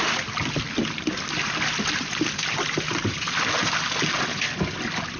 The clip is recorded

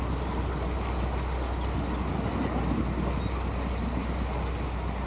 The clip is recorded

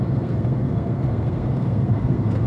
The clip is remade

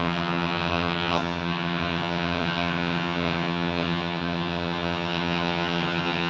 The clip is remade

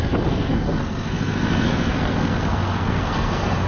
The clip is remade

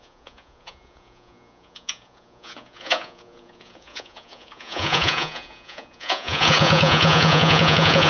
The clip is remade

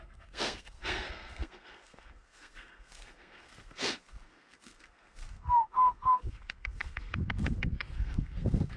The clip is remade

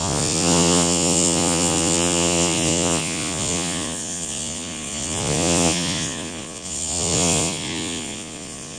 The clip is remade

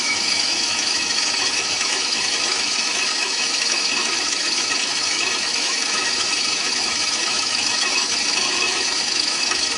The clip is remade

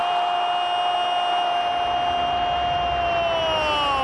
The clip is recorded